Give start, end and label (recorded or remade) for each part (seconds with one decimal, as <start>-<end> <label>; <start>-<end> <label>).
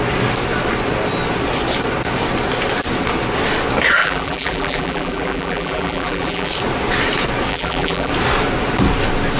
0.0-4.0 recorded; 4.0-6.5 remade; 6.5-7.5 recorded; 7.5-8.1 remade; 8.1-9.4 recorded